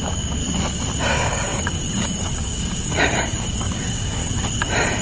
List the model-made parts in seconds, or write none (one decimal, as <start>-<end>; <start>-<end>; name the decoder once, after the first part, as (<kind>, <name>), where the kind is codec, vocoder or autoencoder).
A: 0.0-0.4 (codec, DAC); 1.0-4.2